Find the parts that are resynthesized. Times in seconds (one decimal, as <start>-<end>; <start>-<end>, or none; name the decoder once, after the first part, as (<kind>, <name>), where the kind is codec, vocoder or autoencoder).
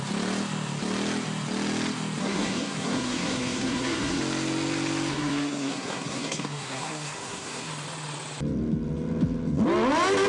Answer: 2.2-4.2 (codec, SNAC); 5.1-7.7